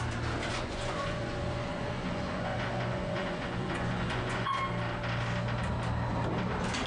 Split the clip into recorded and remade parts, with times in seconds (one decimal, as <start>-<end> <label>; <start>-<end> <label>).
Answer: 0.0-0.5 recorded; 0.5-4.6 remade; 4.6-6.9 recorded